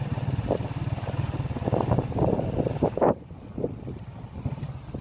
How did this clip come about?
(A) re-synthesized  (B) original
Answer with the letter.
B